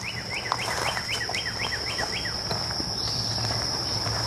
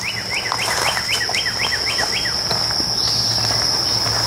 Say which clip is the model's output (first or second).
first